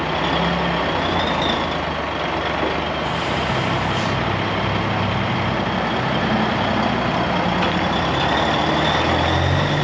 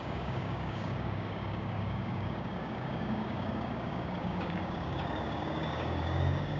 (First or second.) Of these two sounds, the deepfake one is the second